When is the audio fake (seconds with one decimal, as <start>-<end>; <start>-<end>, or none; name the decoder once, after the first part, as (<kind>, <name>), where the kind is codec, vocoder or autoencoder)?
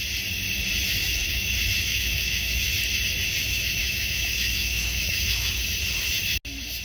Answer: 1.0-1.5 (autoencoder, DAC-VAE); 1.9-2.7; 3.4-5.6